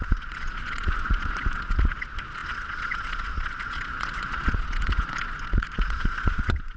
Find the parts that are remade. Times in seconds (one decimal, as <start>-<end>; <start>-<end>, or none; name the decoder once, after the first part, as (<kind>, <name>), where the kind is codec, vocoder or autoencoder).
0.0-6.8 (vocoder, Vocos)